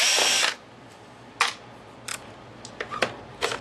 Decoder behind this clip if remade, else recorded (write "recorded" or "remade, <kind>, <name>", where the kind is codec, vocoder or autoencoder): recorded